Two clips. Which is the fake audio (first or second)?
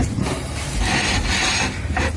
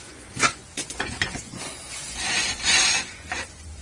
second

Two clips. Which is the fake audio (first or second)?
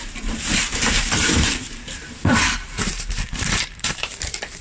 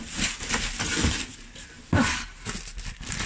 first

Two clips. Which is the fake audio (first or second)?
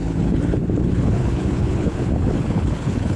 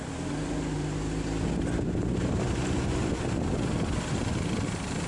first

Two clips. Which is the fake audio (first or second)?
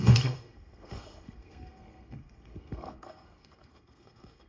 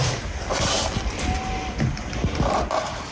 first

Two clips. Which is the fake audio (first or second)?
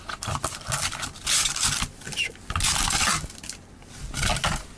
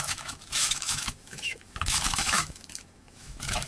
second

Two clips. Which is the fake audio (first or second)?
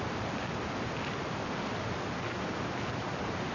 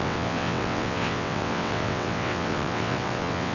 second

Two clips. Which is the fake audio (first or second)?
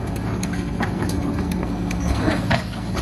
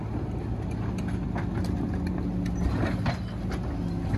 first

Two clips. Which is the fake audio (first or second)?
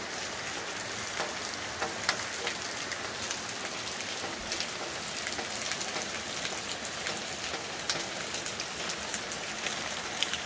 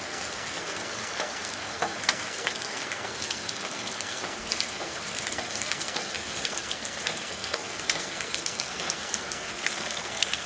second